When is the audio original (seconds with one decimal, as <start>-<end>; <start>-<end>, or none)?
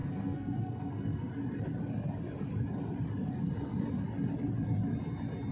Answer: 1.3-5.5